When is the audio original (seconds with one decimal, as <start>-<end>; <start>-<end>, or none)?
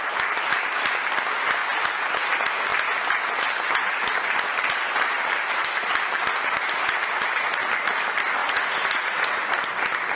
0.0-8.4; 9.5-10.2